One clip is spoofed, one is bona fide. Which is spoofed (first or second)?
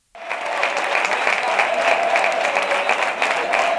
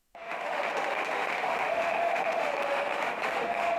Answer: second